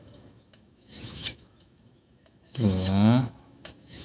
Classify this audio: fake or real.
fake